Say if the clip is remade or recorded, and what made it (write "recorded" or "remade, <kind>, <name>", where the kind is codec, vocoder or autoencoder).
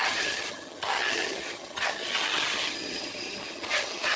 remade, vocoder, HiFi-GAN